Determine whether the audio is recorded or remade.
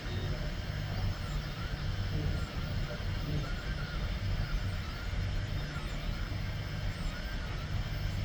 recorded